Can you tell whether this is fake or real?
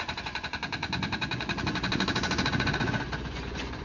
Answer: fake